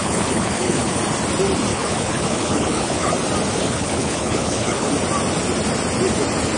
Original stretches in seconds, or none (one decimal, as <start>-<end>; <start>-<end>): 1.0-1.7; 3.1-3.6; 4.9-6.6